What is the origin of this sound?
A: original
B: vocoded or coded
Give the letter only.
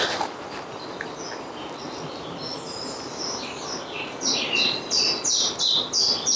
A